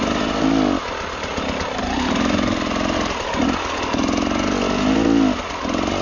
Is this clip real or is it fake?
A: real